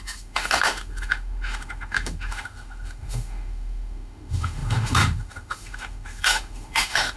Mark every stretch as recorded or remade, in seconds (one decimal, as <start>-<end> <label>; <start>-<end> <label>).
0.0-7.2 remade